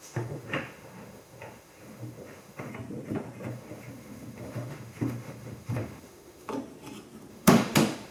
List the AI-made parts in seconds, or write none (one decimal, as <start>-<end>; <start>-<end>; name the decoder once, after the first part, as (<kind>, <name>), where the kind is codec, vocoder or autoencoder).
0.0-2.7 (autoencoder, DAC-VAE); 3.5-6.5; 7.3-8.1